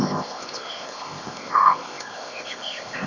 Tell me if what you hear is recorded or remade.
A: remade